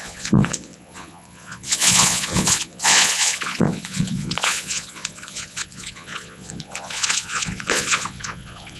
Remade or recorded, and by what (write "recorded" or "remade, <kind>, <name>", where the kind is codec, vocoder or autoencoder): remade, vocoder, Vocos